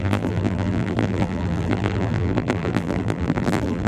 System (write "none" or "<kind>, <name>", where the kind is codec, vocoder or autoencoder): vocoder, BigVGAN v2